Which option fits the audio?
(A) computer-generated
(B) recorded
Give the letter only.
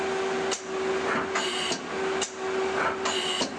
B